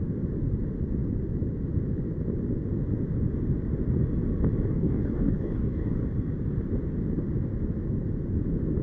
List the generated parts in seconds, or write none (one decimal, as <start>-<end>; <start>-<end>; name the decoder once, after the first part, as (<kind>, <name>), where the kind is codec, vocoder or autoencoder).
4.7-6.0 (codec, DAC)